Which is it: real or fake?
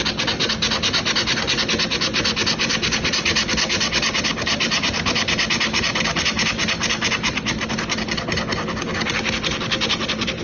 real